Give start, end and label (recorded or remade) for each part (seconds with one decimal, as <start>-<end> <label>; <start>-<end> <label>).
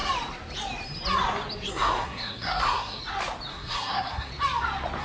0.0-1.7 recorded; 1.7-3.0 remade; 3.0-3.5 recorded; 3.5-4.3 remade; 4.3-5.0 recorded